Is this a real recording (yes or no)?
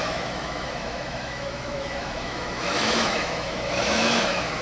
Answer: no